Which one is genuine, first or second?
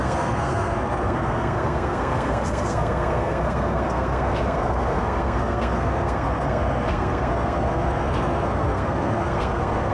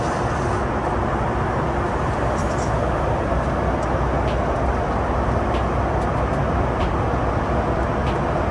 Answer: second